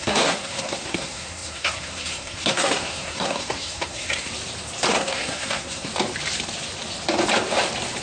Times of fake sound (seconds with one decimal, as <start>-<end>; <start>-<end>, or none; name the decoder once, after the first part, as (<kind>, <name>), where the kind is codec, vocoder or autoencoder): 0.0-4.3 (codec, SNAC); 4.9-5.9